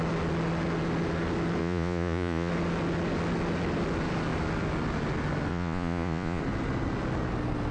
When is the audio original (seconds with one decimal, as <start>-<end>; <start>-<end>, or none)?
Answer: 0.0-1.6; 2.5-5.5; 6.4-7.7